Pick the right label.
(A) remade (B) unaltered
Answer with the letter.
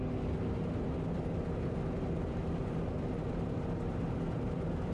B